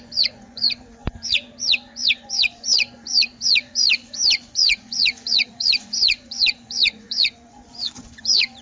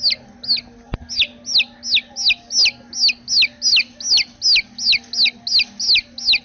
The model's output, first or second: first